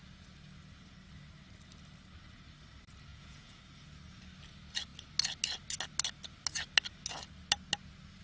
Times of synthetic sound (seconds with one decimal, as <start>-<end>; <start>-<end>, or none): 3.1-3.6